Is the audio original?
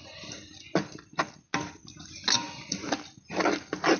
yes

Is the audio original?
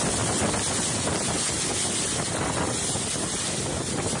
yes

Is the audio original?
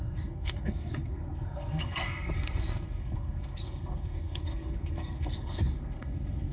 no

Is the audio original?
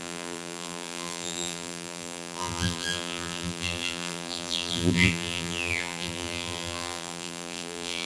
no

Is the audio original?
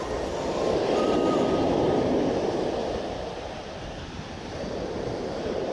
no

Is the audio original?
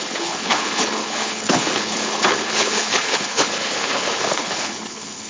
no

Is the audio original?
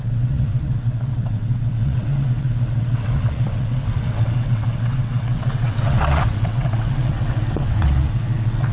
no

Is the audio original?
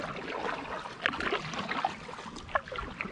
yes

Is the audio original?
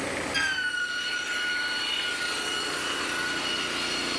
yes